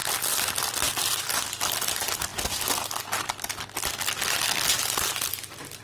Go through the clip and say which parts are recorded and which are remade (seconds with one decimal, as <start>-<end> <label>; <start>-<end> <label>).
0.0-5.8 recorded